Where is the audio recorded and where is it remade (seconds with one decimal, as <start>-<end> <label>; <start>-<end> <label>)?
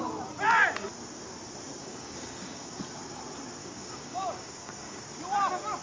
0.0-1.8 recorded; 1.8-2.8 remade; 2.8-3.6 recorded; 3.6-5.0 remade; 5.0-5.8 recorded